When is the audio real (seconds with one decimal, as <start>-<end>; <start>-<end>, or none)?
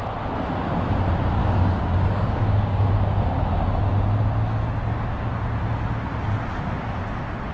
0.0-1.4; 2.9-7.5